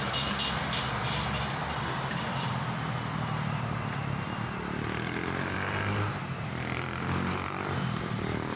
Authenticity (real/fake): fake